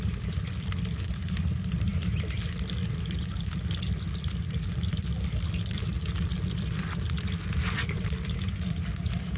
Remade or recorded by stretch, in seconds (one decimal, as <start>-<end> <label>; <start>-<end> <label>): 0.0-9.4 recorded